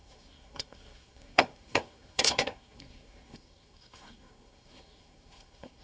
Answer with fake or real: fake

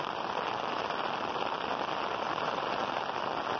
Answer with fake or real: real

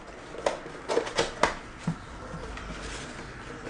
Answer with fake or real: real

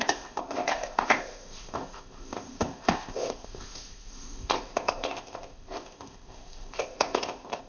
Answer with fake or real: fake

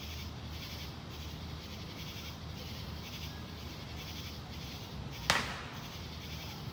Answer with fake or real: real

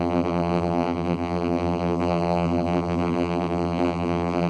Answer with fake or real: fake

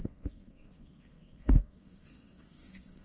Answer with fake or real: fake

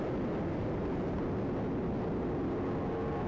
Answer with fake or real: real